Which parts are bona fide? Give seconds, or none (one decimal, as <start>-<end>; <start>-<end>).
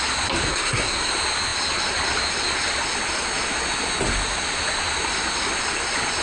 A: 0.0-0.5; 1.1-6.2